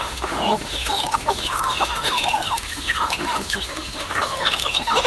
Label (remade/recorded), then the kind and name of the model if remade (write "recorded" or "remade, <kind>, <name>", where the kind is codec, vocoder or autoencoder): remade, autoencoder, DAC-VAE